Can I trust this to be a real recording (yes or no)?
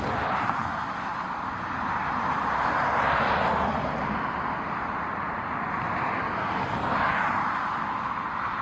yes